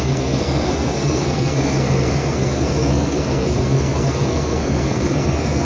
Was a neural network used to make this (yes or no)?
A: yes